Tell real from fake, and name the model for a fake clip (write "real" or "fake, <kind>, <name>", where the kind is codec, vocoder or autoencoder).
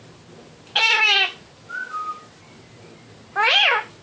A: real